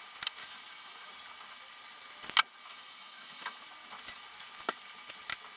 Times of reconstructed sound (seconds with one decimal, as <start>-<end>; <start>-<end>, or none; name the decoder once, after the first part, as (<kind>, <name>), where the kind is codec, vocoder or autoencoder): 0.4-1.1 (autoencoder, DAC-VAE); 2.7-3.6